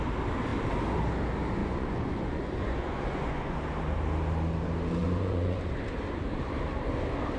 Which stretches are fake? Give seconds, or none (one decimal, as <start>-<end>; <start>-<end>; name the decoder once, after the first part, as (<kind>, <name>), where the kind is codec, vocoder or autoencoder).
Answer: 1.6-3.6 (vocoder, Vocos); 5.0-5.6